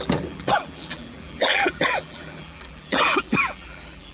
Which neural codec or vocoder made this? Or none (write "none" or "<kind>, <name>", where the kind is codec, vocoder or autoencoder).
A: vocoder, BigVGAN v2